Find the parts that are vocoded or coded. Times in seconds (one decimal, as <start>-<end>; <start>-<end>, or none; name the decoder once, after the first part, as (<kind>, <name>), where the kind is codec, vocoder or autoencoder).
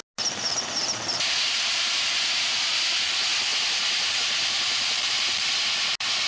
none